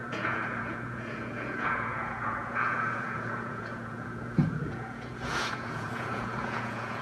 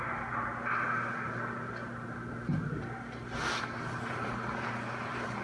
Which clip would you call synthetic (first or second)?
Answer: first